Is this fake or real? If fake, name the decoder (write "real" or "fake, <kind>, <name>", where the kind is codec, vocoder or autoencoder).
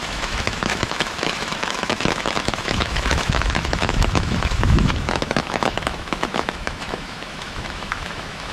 fake, autoencoder, DAC-VAE